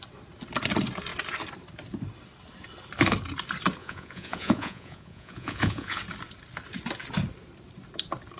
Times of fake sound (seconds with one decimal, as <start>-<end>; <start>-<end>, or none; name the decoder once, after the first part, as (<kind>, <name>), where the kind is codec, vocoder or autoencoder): 3.8-6.0 (vocoder, Vocos)